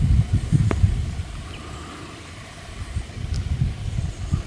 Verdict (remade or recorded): remade